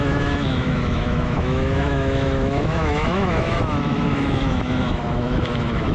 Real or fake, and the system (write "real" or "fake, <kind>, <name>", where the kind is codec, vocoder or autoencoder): fake, autoencoder, DAC-VAE